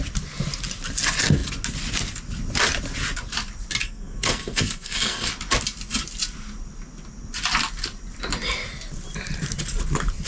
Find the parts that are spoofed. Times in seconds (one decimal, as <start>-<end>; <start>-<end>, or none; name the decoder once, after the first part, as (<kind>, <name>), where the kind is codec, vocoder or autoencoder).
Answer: 3.8-5.3 (codec, SNAC)